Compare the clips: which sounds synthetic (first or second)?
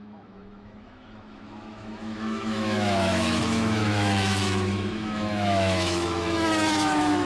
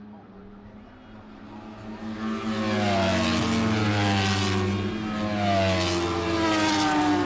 first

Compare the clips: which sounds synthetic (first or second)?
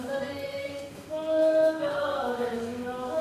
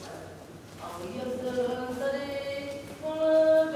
first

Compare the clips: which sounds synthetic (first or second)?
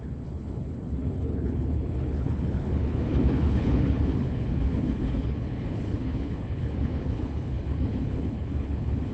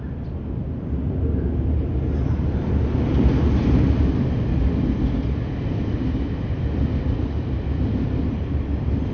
first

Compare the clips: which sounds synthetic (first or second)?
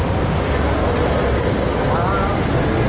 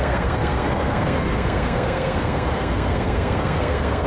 second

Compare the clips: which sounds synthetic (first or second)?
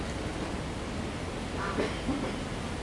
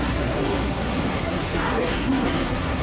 second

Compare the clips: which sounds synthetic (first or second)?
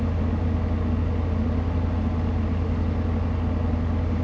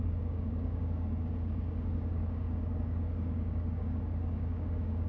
second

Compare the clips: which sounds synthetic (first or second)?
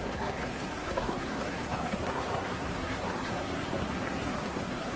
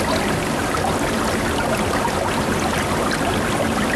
first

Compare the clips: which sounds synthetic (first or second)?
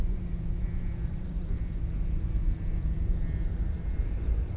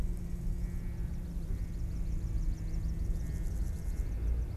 first